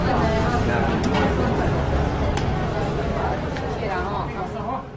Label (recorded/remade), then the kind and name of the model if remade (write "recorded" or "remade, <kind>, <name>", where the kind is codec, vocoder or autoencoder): recorded